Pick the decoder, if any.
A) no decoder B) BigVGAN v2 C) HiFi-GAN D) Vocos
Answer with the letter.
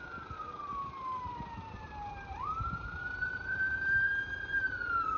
B